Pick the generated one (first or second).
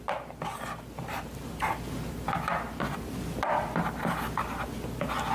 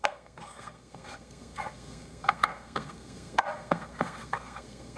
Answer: second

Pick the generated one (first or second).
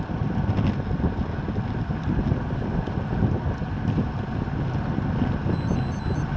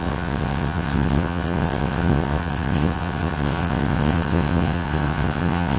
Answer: second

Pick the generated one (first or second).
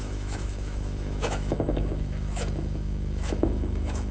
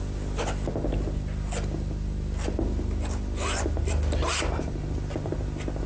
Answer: first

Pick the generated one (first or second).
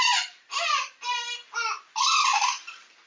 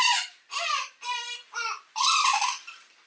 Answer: second